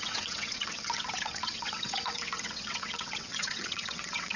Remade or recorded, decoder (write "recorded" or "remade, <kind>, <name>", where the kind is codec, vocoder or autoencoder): remade, vocoder, WaveNeXt